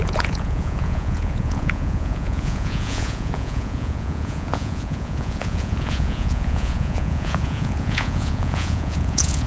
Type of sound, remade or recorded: remade